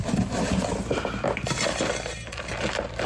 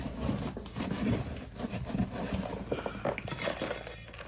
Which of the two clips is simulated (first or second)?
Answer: first